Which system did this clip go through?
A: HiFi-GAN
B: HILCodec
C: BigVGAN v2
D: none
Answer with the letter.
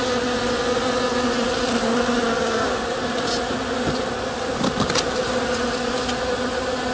D